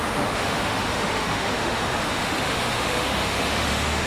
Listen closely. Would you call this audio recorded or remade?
remade